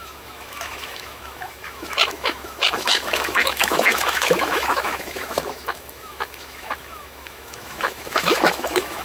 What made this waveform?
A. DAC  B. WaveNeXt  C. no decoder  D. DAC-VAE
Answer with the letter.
D